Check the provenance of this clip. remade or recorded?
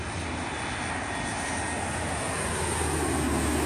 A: recorded